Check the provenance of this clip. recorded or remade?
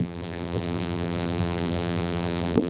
remade